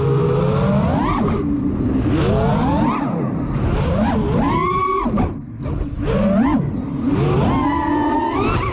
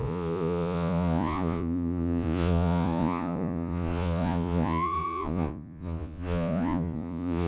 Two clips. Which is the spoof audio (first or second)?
second